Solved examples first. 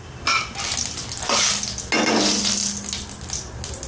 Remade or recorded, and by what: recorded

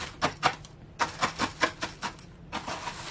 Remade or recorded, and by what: recorded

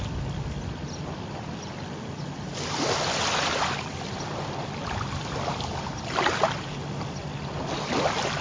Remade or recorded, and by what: recorded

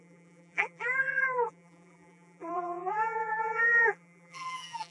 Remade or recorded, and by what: remade, vocoder, BigVGAN v2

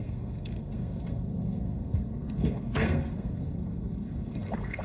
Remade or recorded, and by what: remade, codec, SNAC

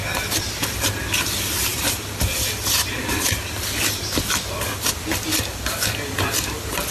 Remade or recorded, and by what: recorded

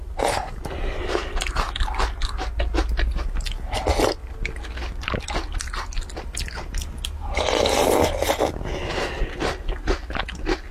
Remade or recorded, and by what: recorded